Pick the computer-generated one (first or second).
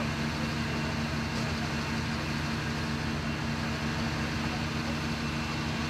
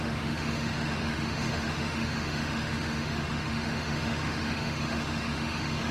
second